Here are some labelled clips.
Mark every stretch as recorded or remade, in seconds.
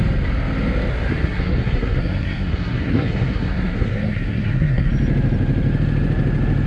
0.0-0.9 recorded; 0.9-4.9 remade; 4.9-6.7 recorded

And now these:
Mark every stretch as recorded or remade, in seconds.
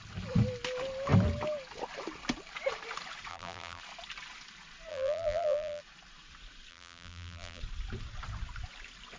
0.0-3.3 recorded; 3.3-3.8 remade; 3.8-4.9 recorded; 4.9-5.8 remade; 5.8-6.7 recorded; 6.7-7.6 remade; 7.6-9.2 recorded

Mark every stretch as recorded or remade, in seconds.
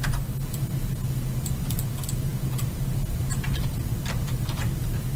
0.0-5.2 recorded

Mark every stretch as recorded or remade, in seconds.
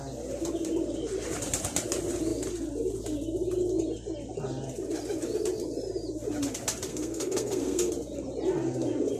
0.0-6.9 recorded; 6.9-7.9 remade; 7.9-9.2 recorded